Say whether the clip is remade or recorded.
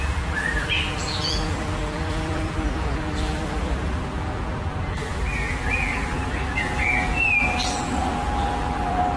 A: remade